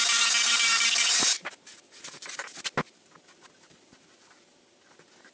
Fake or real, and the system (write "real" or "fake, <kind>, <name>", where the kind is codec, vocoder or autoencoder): real